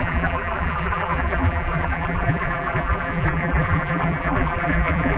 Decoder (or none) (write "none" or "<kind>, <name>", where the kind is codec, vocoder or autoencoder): vocoder, BigVGAN v2